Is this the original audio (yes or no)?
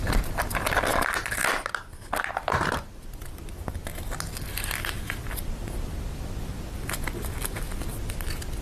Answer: yes